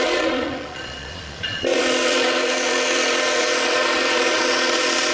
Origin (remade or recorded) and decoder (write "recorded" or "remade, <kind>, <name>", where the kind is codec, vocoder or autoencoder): remade, vocoder, Vocos